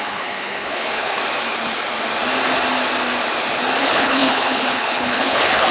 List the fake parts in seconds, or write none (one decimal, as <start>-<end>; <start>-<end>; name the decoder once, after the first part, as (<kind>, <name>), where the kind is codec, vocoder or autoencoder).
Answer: 0.0-1.2 (codec, HILCodec); 3.8-5.7